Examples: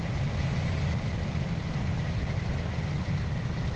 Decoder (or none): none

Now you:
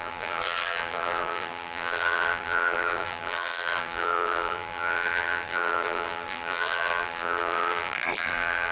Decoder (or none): vocoder, BigVGAN v2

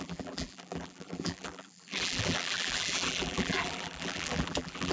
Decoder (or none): vocoder, BigVGAN v2